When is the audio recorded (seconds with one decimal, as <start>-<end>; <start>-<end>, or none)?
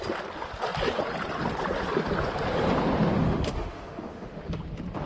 0.0-3.2; 4.6-5.1